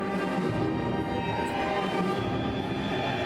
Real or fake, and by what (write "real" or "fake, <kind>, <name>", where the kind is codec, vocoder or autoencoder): real